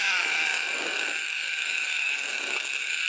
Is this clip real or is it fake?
fake